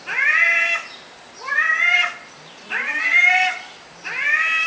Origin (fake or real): real